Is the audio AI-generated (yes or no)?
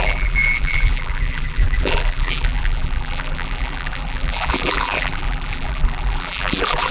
yes